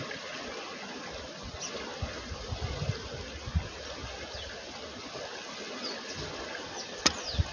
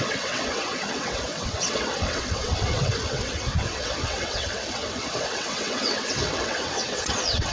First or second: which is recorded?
first